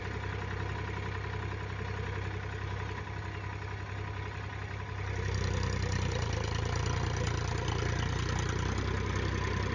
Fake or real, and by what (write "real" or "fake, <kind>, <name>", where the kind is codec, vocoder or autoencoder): real